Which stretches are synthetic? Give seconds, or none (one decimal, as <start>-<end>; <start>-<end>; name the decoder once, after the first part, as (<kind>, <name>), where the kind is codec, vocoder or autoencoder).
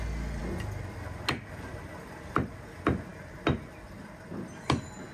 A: none